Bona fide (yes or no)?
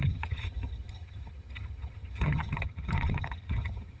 no